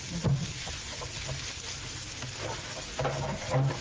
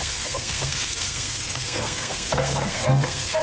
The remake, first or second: second